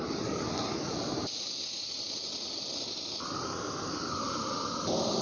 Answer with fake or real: real